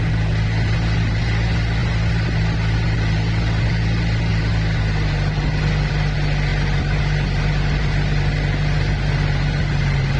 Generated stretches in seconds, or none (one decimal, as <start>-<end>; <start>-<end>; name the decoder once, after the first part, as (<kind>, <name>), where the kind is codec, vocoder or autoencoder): none